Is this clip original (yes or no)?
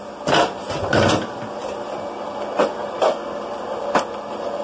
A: yes